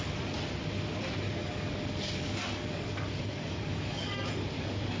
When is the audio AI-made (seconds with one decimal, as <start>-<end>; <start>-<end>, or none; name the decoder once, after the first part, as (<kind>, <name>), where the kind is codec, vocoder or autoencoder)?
1.4-4.3 (codec, DAC)